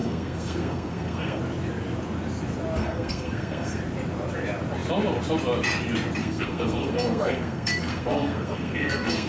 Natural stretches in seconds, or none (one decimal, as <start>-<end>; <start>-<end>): 1.4-2.8; 3.8-6.2